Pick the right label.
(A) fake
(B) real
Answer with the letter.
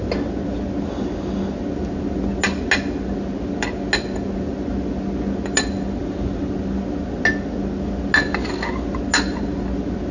B